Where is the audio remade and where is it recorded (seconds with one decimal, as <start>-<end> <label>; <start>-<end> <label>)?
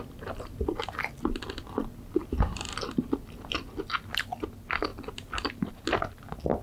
0.0-6.6 recorded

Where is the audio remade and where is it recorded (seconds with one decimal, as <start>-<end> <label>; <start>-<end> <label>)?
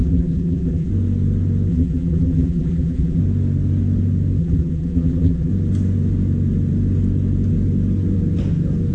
0.0-0.9 remade; 0.9-1.7 recorded; 1.7-3.2 remade; 3.2-4.4 recorded; 4.4-5.5 remade; 5.5-8.9 recorded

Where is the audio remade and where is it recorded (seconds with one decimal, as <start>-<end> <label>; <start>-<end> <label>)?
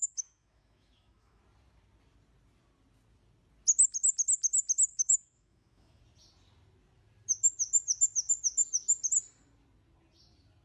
0.0-1.4 remade; 1.4-4.9 recorded; 4.9-6.0 remade; 6.0-10.6 recorded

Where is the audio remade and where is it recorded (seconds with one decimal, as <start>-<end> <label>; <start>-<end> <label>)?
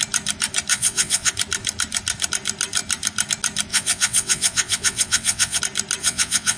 0.0-0.7 recorded; 0.7-1.3 remade; 1.3-3.7 recorded; 3.7-5.6 remade; 5.6-6.0 recorded; 6.0-6.6 remade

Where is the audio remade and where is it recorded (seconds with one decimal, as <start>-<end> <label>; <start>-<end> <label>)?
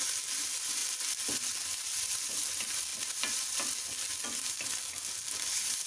0.0-5.9 recorded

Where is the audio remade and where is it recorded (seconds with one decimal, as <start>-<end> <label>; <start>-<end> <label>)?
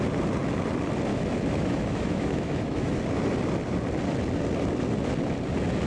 0.0-1.1 recorded; 1.1-3.0 remade; 3.0-5.9 recorded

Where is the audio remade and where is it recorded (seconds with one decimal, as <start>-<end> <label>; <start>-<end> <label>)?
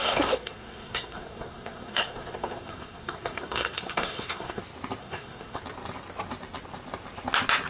0.0-4.6 remade; 4.6-5.0 recorded; 5.0-5.6 remade; 5.6-7.7 recorded